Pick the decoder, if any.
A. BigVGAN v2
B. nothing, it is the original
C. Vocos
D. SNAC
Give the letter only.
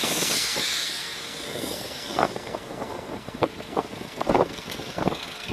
D